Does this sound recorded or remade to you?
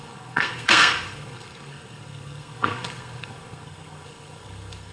remade